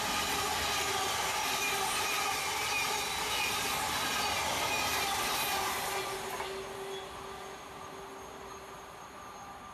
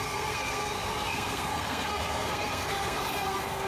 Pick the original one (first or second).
first